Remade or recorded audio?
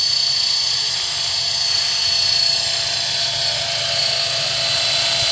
recorded